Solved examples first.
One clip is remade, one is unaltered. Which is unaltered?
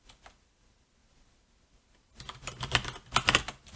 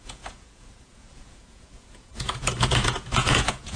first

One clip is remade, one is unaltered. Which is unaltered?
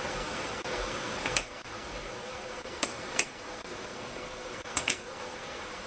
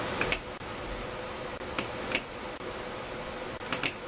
second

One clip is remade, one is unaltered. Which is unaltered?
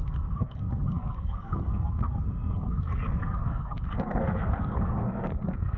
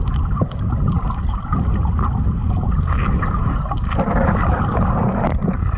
second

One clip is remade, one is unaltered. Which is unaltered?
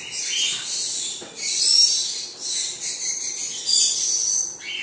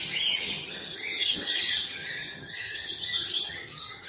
first